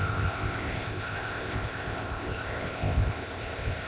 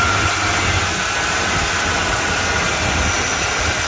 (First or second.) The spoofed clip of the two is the first